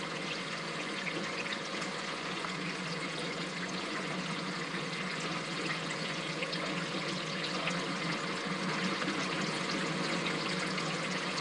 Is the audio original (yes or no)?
no